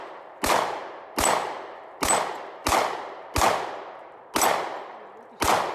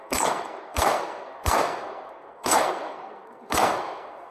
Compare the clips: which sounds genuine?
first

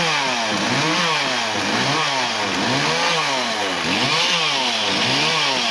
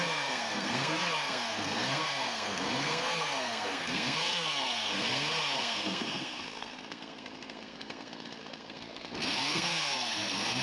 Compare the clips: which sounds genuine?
first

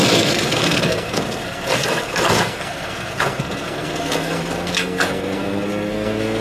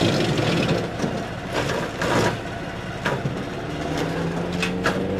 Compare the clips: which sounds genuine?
second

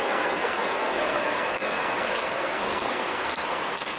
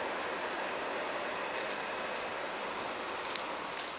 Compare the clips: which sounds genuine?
second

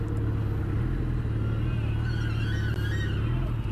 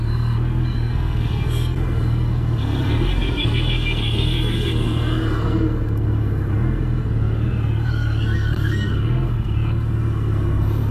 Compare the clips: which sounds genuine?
first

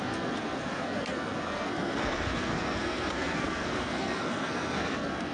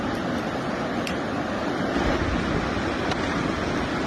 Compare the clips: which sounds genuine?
second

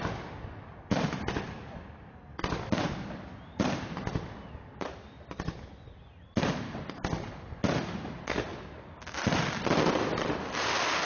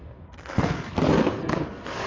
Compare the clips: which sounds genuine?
first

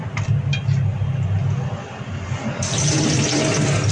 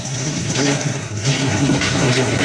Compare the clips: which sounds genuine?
first